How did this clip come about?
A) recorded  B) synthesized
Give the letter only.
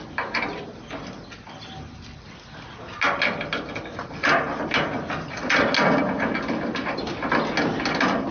A